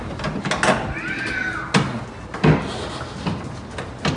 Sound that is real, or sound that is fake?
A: real